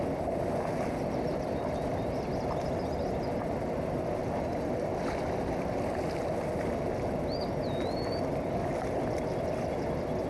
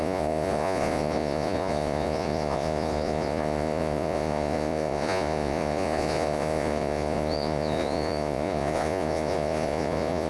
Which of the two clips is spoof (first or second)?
second